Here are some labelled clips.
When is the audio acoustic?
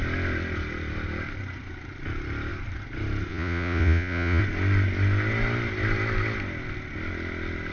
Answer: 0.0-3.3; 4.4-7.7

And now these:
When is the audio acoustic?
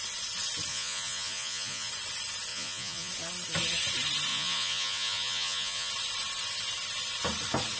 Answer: 0.0-0.7; 1.9-2.5; 3.1-4.3; 5.9-7.8